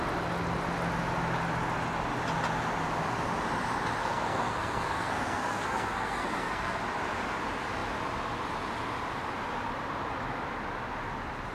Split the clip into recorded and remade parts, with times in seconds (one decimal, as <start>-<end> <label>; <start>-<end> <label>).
0.0-4.0 recorded; 4.0-6.8 remade; 6.8-11.5 recorded

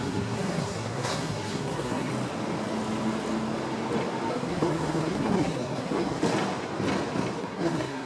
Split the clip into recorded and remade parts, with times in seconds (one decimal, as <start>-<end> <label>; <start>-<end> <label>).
0.0-2.1 remade; 2.1-4.3 recorded; 4.3-6.2 remade; 6.2-7.4 recorded; 7.4-8.1 remade

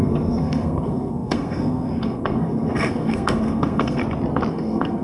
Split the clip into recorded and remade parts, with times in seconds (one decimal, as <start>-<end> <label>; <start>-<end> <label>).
0.0-4.0 remade; 4.0-4.5 recorded; 4.5-5.0 remade

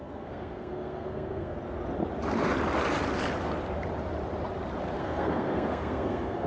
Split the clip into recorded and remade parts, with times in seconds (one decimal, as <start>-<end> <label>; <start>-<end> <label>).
0.0-1.6 remade; 1.6-5.0 recorded; 5.0-6.5 remade

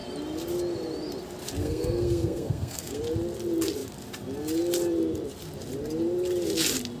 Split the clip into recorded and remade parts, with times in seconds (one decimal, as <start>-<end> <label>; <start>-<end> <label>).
0.0-1.6 recorded; 1.6-3.0 remade; 3.0-7.0 recorded

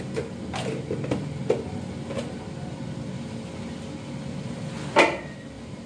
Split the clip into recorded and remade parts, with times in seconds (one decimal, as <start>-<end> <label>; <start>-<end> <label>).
0.0-5.9 recorded

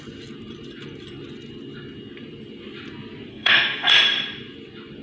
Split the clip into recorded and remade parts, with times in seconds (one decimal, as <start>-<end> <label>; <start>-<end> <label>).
0.0-3.3 recorded; 3.3-3.9 remade; 3.9-5.0 recorded

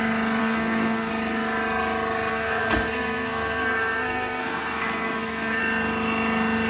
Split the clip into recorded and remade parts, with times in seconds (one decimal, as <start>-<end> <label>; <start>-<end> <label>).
0.0-0.4 recorded; 0.4-1.1 remade; 1.1-2.3 recorded; 2.3-5.6 remade; 5.6-6.7 recorded